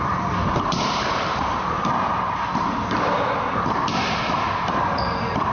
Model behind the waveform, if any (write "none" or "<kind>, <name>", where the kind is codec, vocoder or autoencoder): vocoder, BigVGAN v2